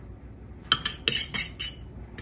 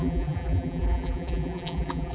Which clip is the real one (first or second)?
first